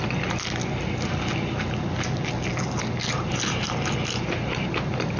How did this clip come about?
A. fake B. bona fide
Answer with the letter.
B